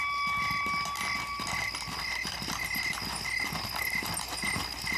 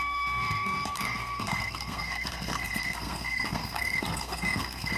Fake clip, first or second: second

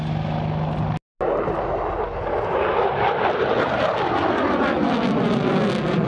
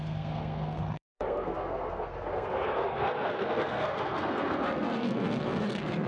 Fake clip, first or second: second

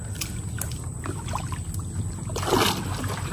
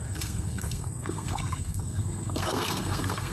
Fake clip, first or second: second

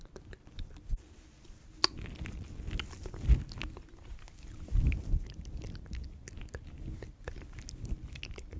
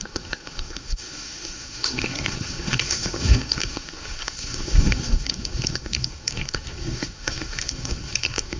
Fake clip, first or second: second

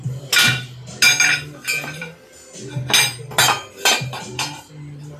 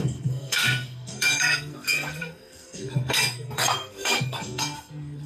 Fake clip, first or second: second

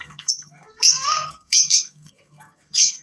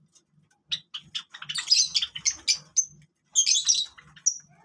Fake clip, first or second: first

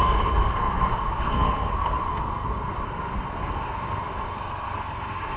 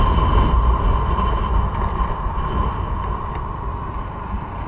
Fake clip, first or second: first